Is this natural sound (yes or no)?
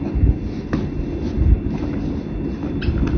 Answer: yes